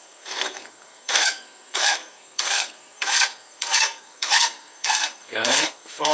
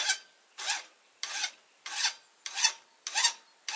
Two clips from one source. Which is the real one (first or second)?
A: second